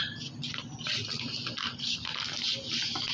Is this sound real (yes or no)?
yes